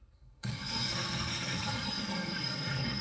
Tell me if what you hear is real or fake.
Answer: fake